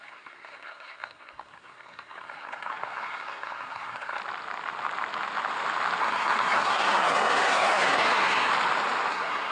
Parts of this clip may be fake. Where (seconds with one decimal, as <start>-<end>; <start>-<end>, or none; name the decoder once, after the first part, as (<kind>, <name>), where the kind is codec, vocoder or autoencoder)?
0.0-4.2 (codec, SNAC); 6.0-8.5; 9.1-9.5